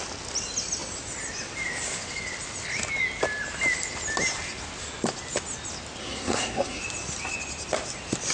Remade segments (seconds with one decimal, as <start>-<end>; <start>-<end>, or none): 6.0-6.8